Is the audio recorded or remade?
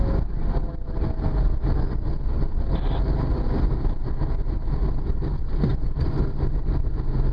recorded